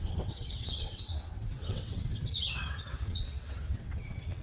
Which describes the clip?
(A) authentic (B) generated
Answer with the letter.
B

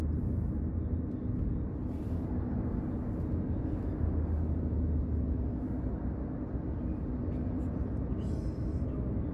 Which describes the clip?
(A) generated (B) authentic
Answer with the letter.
B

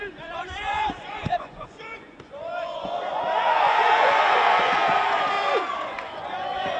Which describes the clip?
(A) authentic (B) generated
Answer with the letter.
B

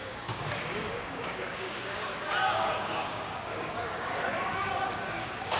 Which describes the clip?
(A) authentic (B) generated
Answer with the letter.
B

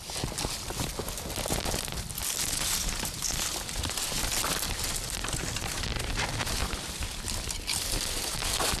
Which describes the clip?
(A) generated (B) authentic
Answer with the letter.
B